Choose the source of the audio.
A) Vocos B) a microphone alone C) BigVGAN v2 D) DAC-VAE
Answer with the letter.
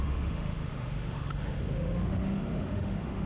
D